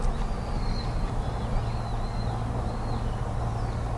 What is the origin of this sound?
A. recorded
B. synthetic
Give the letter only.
A